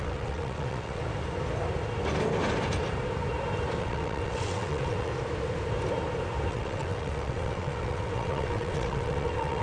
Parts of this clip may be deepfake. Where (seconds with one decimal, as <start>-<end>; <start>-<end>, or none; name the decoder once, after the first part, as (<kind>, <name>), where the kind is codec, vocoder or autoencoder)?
0.0-1.0 (vocoder, WaveNeXt); 3.8-5.1; 6.5-9.6

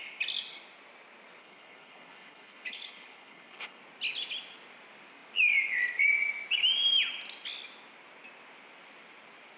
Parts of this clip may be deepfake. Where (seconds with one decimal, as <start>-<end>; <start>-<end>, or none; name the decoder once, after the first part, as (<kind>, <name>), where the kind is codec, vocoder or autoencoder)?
1.4-3.8 (codec, HILCodec)

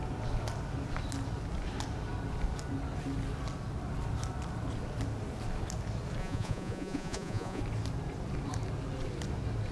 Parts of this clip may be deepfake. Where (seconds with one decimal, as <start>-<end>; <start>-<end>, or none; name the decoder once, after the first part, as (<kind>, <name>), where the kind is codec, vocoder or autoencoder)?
6.2-7.6 (vocoder, Vocos)

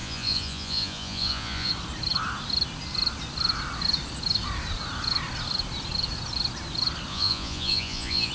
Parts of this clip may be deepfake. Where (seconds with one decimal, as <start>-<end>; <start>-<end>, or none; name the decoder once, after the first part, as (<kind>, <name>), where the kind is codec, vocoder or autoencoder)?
0.0-1.7 (vocoder, Vocos); 7.1-8.3

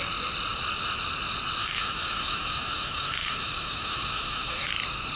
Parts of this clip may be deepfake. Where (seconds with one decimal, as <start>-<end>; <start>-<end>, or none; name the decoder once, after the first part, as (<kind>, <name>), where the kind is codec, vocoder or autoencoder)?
1.6-4.7 (autoencoder, DAC-VAE)

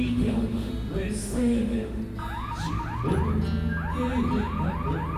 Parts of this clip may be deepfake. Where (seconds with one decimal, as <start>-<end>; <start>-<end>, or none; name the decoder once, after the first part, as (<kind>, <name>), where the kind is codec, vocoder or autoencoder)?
0.0-0.7 (autoencoder, DAC-VAE); 1.2-2.0

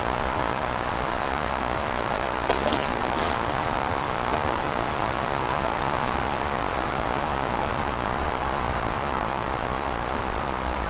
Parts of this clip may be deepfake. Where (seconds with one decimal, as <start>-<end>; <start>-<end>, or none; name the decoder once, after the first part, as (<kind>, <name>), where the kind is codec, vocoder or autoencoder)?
0.0-10.9 (vocoder, Vocos)